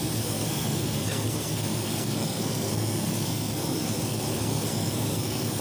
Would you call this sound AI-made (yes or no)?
yes